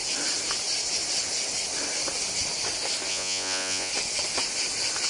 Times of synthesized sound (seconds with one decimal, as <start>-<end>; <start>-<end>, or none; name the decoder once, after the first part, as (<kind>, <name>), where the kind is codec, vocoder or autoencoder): 3.1-3.9 (vocoder, Vocos)